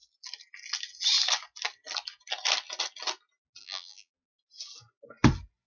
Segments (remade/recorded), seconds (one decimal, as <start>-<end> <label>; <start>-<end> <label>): 0.0-3.6 recorded; 3.6-4.4 remade; 4.4-5.7 recorded

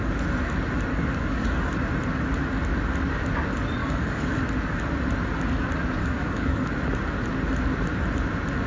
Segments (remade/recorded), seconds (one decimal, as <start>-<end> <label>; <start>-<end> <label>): 0.0-0.9 recorded; 0.9-1.7 remade; 1.7-3.8 recorded; 3.8-4.4 remade; 4.4-6.0 recorded; 6.0-6.8 remade; 6.8-8.7 recorded

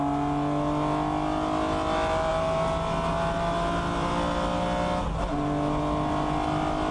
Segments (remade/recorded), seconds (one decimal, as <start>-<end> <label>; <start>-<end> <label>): 0.0-6.9 recorded

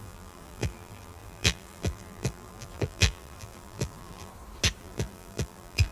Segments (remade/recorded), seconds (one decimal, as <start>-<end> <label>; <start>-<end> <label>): 0.0-4.3 remade; 4.3-4.8 recorded; 4.8-5.9 remade